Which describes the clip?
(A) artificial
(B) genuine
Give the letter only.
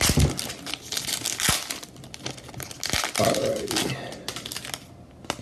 B